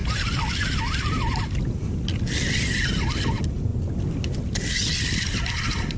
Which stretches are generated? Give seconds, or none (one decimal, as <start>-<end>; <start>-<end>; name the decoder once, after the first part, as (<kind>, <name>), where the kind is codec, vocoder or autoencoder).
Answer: none